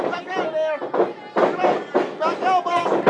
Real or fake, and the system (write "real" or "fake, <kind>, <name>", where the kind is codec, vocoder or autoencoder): real